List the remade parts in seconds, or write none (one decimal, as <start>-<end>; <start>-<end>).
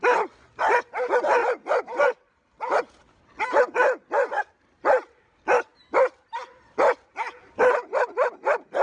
1.4-2.8; 5.7-8.8